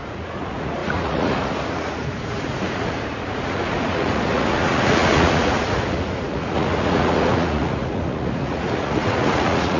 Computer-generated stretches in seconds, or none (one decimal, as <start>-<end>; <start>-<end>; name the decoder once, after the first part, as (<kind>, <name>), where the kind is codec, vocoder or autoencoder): 0.0-9.8 (vocoder, Vocos)